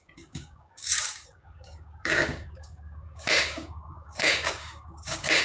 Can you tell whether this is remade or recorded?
remade